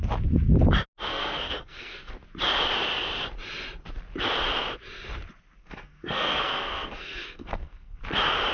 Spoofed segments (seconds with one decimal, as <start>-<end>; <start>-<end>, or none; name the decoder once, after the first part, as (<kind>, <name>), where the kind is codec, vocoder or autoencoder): 1.1-2.1 (codec, SNAC); 5.6-8.0